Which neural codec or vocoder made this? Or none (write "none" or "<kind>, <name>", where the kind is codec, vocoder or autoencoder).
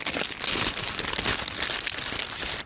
none